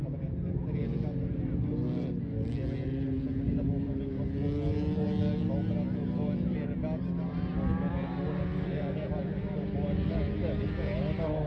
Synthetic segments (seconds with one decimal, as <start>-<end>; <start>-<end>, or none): 8.6-9.1